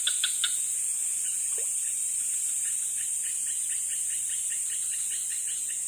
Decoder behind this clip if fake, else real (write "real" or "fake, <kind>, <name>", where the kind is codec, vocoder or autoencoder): real